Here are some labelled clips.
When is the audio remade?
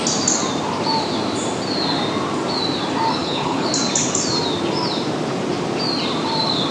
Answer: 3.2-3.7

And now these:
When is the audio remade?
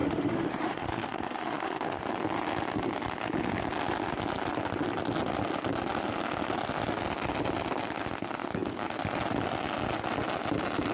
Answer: 0.0-2.0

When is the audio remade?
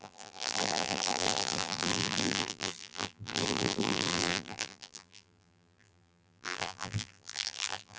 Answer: 0.0-8.0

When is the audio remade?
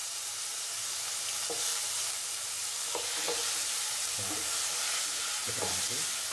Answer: 0.0-0.8; 1.7-2.2; 2.7-5.8